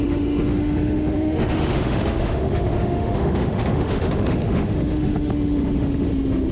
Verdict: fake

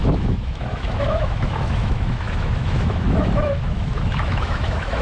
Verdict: fake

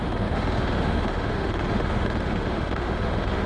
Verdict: fake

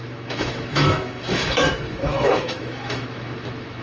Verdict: fake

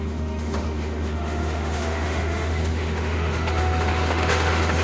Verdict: fake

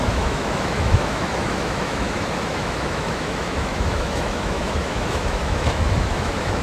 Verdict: fake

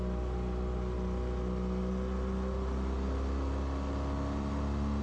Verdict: real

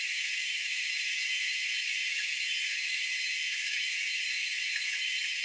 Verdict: fake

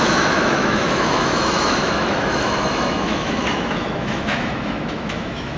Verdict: fake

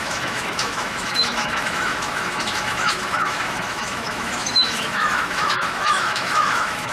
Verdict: fake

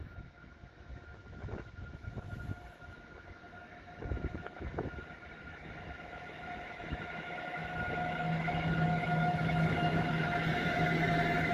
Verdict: fake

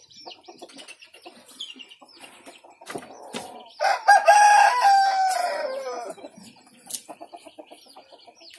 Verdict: real